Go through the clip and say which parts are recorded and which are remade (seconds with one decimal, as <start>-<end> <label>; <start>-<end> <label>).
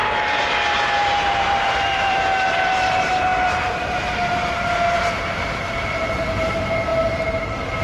0.0-1.0 recorded; 1.0-7.8 remade